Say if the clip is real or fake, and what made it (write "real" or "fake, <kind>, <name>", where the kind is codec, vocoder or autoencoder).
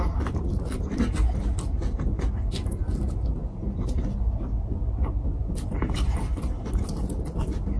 real